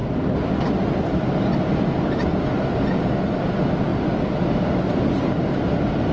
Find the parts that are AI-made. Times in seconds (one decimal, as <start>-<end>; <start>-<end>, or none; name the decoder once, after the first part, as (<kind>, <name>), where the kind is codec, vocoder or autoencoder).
none

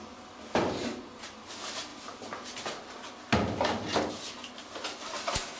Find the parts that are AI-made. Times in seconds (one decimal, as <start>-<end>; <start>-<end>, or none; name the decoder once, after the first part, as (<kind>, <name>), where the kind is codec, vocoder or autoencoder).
none

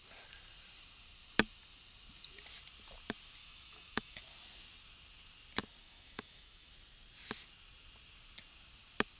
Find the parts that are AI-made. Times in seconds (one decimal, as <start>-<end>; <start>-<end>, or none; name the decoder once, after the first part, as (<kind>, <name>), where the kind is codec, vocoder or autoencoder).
3.4-4.2 (autoencoder, DAC-VAE); 5.8-6.7

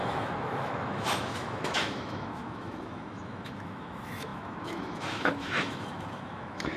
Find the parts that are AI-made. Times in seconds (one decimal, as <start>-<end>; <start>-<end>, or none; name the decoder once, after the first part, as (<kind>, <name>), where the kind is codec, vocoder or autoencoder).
0.0-6.8 (autoencoder, DAC-VAE)